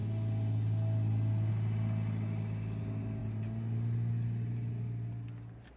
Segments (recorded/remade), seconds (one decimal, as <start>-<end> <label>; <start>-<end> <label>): 0.0-5.8 recorded